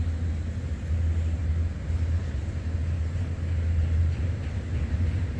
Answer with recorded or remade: recorded